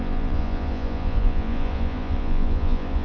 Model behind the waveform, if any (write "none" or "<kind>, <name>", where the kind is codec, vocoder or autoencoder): vocoder, Vocos